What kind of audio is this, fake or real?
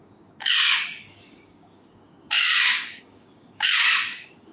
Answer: fake